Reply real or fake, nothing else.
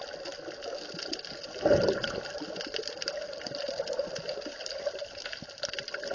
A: real